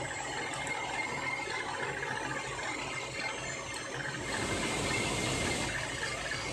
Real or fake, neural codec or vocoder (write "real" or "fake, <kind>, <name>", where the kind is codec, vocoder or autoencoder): real